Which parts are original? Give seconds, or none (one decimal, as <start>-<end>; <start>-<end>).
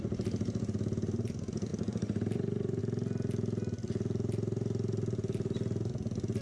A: 0.0-1.7; 2.8-6.4